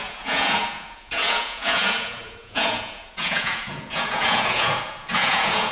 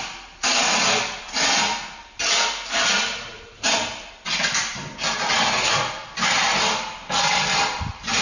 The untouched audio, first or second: second